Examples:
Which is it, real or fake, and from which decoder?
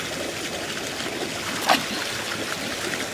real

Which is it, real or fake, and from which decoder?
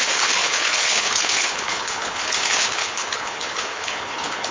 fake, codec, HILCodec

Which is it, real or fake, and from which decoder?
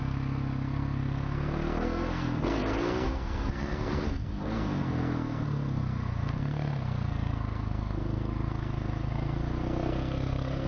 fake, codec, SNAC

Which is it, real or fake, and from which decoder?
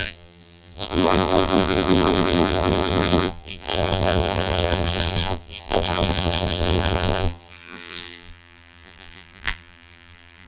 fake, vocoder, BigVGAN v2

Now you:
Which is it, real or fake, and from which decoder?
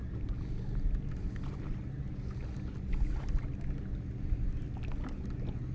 real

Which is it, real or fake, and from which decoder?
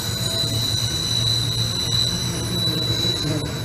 real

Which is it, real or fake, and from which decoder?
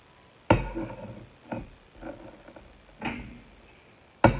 real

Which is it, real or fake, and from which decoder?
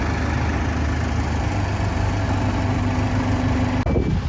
real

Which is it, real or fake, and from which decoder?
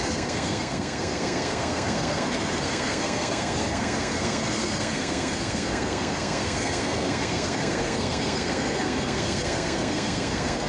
fake, codec, SNAC